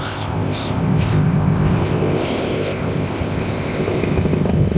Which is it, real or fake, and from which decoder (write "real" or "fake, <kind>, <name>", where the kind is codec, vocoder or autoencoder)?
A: fake, codec, ZipCodec